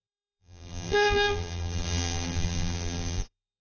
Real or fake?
fake